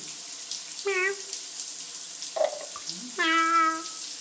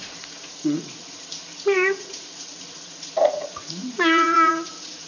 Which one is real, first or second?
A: first